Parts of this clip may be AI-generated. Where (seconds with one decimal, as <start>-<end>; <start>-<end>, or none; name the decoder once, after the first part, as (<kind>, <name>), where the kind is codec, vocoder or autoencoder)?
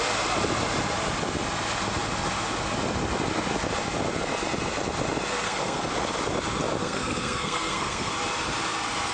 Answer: 5.3-5.8 (codec, SNAC); 6.8-8.1